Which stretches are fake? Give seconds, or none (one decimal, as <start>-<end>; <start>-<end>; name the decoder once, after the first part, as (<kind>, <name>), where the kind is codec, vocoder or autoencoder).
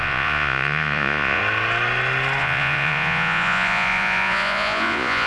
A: 0.0-1.4 (vocoder, Vocos); 2.4-5.3